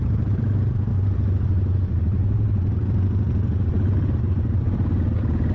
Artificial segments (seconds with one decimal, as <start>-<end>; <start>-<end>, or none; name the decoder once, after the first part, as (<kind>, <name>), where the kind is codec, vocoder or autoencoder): none